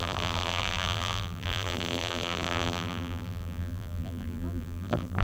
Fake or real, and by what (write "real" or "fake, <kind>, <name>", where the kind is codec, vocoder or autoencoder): fake, vocoder, BigVGAN v2